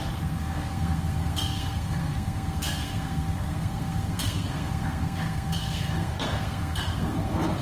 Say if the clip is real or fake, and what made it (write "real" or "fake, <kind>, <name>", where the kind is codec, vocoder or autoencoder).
fake, codec, SNAC